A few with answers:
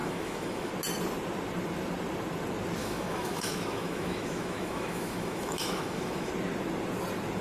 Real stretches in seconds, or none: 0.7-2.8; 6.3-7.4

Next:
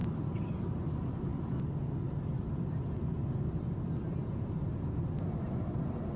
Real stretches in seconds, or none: 0.0-6.2

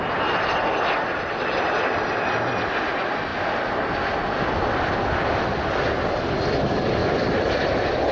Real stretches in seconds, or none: 0.0-8.1

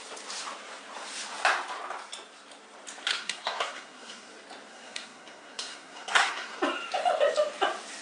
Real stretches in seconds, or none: 0.0-3.1; 4.3-4.7; 6.6-8.0

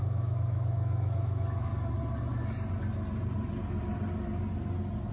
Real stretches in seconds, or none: 1.7-5.1

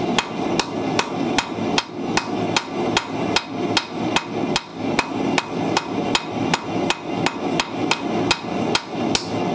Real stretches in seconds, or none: 0.0-9.5

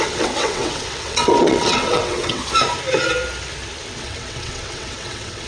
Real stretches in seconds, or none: 2.4-4.0